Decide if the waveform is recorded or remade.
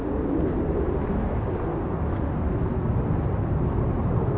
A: recorded